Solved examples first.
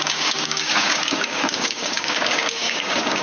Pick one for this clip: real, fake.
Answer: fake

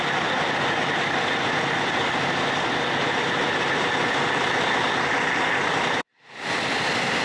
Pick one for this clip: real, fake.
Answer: real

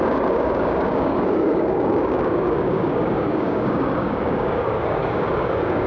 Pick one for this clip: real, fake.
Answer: fake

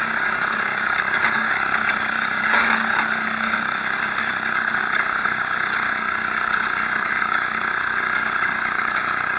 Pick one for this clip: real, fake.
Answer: fake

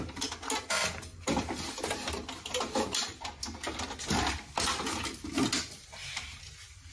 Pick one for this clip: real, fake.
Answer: real